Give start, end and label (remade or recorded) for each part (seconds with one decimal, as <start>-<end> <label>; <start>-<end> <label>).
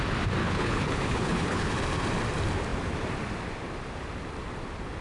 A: 0.0-0.4 recorded; 0.4-1.7 remade; 1.7-5.0 recorded